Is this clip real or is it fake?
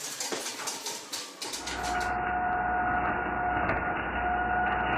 real